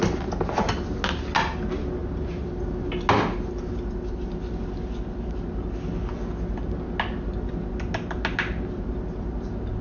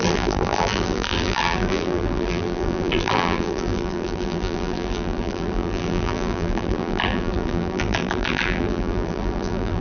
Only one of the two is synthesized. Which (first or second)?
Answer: second